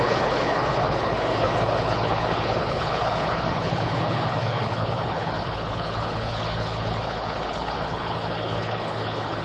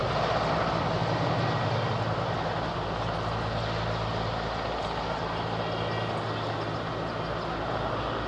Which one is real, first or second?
second